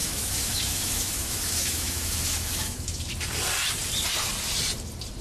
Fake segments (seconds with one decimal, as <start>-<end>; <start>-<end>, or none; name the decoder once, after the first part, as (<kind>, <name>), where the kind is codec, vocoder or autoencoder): 0.0-3.1 (autoencoder, DAC-VAE)